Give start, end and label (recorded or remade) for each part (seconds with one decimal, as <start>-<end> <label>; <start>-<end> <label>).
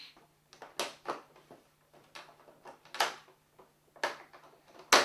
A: 0.0-5.0 recorded